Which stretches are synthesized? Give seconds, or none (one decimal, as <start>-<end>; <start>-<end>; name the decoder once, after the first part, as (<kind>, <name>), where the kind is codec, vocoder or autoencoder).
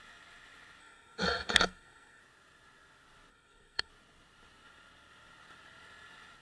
0.8-2.2 (codec, SNAC); 3.3-3.9